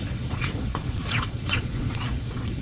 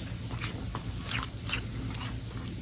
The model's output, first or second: first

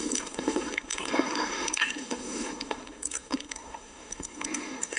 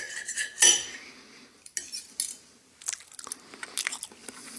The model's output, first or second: first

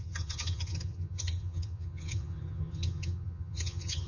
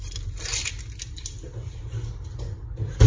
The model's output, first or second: first